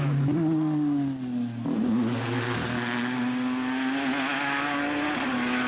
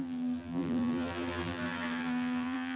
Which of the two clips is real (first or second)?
first